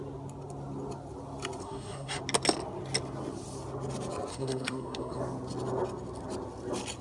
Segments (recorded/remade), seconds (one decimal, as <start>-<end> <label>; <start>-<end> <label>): 0.0-1.6 recorded; 1.6-2.2 remade; 2.2-4.3 recorded; 4.3-5.2 remade; 5.2-7.0 recorded